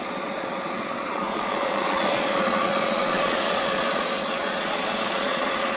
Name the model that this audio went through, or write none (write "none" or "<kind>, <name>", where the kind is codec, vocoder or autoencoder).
vocoder, Vocos